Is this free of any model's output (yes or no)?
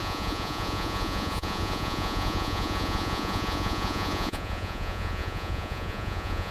no